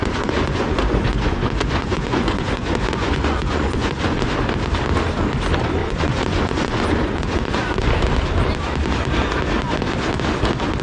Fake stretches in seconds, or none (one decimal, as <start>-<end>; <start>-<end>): 0.0-4.3; 5.8-7.9